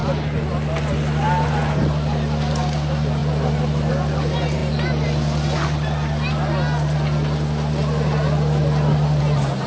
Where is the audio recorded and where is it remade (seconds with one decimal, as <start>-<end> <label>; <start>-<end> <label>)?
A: 0.0-9.7 recorded